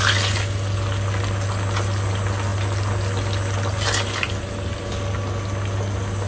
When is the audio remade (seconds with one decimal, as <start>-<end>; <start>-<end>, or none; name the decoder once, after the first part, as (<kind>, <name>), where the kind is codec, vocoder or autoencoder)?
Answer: none